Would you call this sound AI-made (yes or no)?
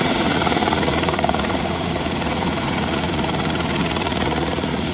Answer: yes